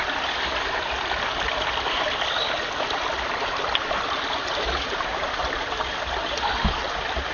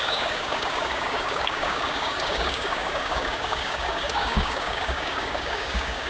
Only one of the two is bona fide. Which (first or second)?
first